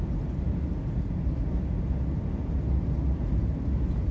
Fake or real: real